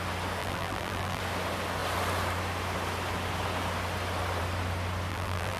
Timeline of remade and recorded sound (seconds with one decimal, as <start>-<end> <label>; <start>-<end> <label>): 0.0-0.4 recorded; 0.4-1.2 remade; 1.2-5.1 recorded; 5.1-5.6 remade